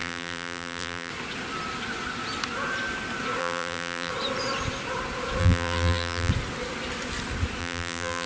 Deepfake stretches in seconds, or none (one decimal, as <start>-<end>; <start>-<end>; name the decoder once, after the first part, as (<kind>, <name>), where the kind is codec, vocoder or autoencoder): 0.0-1.1 (vocoder, BigVGAN v2); 3.4-4.1; 5.4-6.3; 7.6-8.3